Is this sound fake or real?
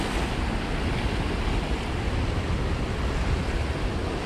real